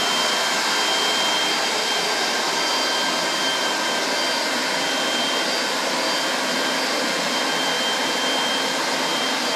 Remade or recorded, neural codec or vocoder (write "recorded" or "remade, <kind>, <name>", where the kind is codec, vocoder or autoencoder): recorded